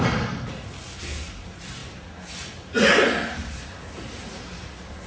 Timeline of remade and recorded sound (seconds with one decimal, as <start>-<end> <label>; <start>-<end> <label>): 0.0-5.1 recorded